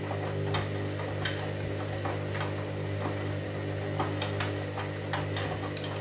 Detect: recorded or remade recorded